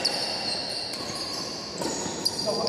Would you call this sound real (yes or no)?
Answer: yes